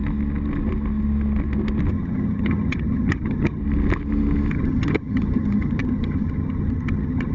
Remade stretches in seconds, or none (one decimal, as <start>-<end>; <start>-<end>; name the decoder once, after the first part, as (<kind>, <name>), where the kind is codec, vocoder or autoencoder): 1.9-3.6 (vocoder, HiFi-GAN); 4.5-7.3